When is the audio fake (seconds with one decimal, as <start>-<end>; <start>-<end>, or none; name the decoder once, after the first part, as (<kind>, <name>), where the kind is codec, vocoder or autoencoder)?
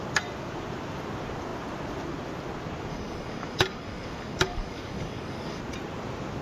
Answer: 2.9-5.6 (codec, DAC)